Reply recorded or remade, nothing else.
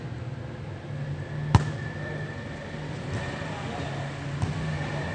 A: recorded